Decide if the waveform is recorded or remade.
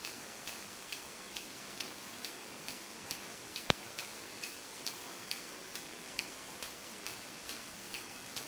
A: remade